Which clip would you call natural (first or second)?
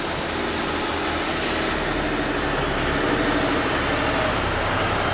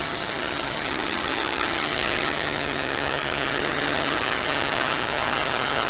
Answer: first